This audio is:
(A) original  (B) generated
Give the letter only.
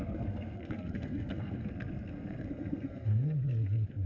B